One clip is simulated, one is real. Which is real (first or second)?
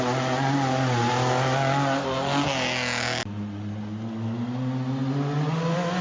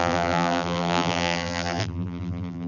first